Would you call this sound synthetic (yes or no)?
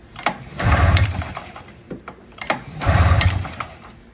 yes